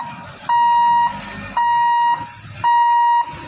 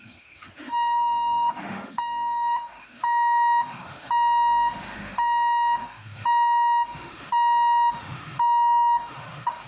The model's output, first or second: second